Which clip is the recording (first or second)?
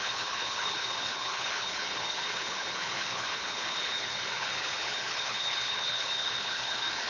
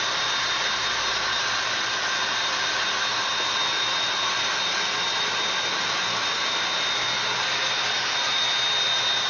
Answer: second